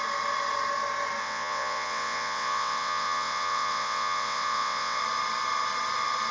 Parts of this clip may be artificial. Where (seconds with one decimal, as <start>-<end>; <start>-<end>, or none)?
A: 1.2-5.0